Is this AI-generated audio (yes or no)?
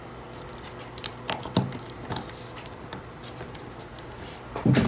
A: no